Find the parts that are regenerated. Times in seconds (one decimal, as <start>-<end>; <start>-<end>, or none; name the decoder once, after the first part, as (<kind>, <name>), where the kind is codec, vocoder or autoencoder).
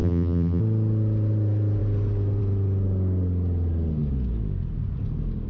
0.0-0.6 (vocoder, BigVGAN v2)